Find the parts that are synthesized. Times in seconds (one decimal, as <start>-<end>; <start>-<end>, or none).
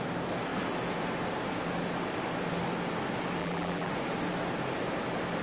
3.4-3.9